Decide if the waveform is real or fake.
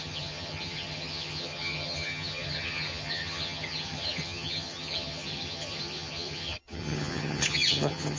fake